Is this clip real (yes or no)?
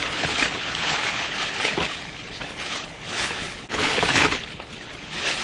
no